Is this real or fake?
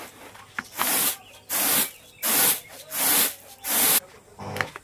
real